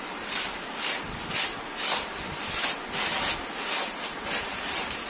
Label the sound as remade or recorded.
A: recorded